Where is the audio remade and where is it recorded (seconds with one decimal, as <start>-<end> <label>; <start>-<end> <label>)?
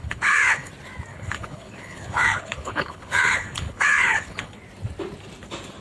0.0-0.7 remade; 0.7-1.1 recorded; 1.1-4.6 remade; 4.6-5.8 recorded